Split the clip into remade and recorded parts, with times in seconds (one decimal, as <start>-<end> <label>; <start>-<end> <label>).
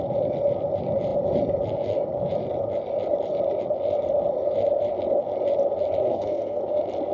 0.0-6.0 recorded; 6.0-6.6 remade; 6.6-7.1 recorded